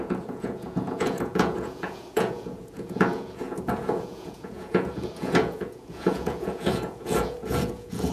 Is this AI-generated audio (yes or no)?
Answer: yes